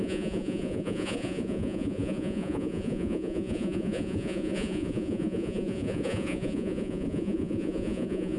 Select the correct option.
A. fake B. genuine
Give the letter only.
A